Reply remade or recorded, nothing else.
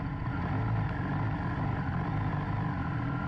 recorded